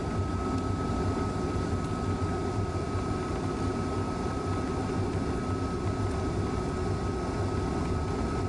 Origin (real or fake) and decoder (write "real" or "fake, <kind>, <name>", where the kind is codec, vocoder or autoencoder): real